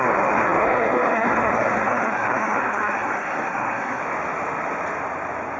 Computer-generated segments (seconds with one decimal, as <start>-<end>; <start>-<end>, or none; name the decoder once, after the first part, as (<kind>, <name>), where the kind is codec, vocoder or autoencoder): 0.0-4.0 (codec, SNAC)